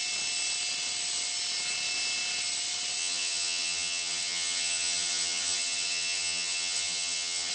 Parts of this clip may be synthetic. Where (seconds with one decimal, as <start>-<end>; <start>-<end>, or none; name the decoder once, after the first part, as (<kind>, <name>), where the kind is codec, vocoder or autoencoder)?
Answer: 3.0-7.5 (vocoder, HiFi-GAN)

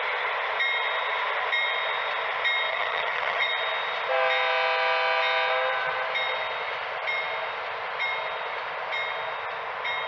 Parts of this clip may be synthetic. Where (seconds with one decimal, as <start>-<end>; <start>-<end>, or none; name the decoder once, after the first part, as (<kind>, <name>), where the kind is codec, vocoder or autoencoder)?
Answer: 2.7-3.5 (vocoder, HiFi-GAN)

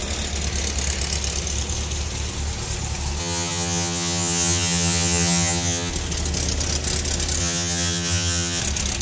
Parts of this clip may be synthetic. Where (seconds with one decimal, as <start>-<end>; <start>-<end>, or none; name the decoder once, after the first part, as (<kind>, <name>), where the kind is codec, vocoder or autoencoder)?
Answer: 3.2-5.9 (vocoder, HiFi-GAN); 7.4-8.6

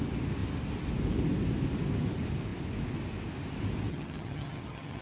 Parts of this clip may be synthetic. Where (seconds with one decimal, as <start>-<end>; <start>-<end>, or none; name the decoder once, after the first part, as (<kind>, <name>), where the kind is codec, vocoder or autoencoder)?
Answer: 3.9-5.0 (vocoder, HiFi-GAN)

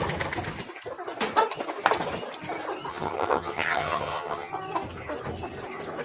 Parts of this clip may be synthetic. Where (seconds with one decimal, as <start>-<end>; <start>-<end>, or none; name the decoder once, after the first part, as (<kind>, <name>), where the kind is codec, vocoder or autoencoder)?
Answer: 2.9-4.5 (vocoder, HiFi-GAN)

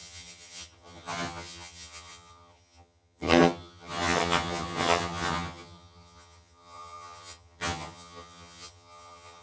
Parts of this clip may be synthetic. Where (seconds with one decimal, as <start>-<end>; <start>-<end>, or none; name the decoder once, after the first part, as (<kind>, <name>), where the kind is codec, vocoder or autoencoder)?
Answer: 0.0-9.4 (vocoder, HiFi-GAN)

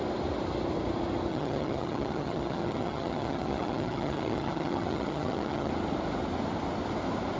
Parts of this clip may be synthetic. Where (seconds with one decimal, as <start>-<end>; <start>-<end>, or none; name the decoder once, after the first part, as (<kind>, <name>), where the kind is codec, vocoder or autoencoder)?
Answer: 1.3-5.7 (vocoder, HiFi-GAN)